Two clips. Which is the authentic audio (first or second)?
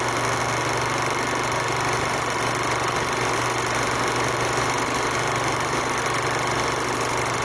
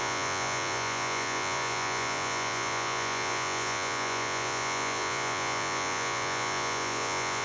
first